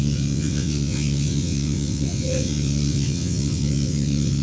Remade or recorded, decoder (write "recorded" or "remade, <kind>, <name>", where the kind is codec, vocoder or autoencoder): remade, vocoder, WaveNeXt